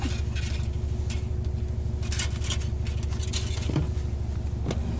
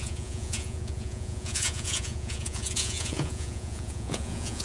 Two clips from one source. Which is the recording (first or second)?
first